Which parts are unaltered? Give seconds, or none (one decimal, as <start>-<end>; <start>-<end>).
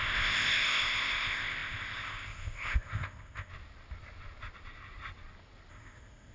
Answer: 3.5-5.7